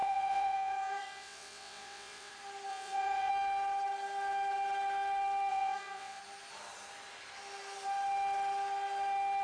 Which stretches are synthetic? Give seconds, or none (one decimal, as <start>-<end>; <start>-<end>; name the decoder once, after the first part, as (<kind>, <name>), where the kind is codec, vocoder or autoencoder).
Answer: 0.0-2.3 (vocoder, WaveNeXt); 2.7-3.3; 5.5-6.2